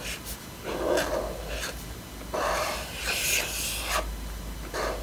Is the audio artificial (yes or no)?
no